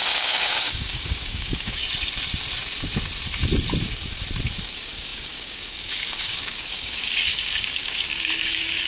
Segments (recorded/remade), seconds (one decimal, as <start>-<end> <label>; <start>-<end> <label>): 0.0-1.8 remade; 1.8-4.6 recorded; 4.6-8.9 remade